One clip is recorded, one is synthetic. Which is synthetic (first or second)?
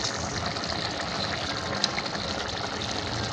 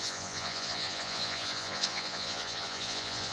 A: second